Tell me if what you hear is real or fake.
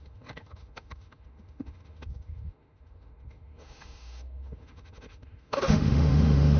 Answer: fake